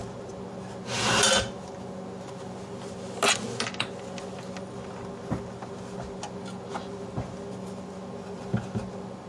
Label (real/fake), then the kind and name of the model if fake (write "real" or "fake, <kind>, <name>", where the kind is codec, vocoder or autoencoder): real